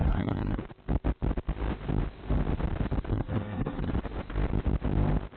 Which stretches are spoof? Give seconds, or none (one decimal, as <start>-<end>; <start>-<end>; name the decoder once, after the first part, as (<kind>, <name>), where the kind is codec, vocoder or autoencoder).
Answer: 0.0-0.6 (codec, SNAC); 3.1-3.9